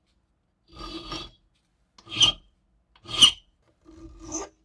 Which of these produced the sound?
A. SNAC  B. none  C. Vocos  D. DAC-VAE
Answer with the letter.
B